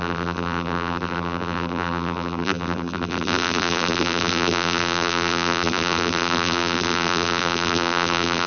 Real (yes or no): no